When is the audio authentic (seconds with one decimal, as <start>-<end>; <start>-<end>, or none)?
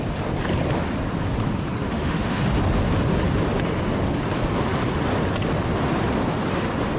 0.0-1.8; 2.4-7.0